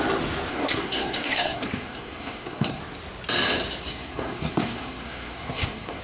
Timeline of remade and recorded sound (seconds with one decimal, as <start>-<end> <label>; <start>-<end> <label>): 0.0-0.5 recorded; 0.5-2.8 remade; 2.8-3.9 recorded; 3.9-6.0 remade